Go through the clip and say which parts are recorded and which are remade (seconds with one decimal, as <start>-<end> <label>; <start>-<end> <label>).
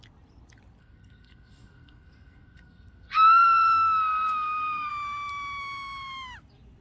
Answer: 0.0-0.8 recorded; 0.8-4.9 remade; 4.9-6.8 recorded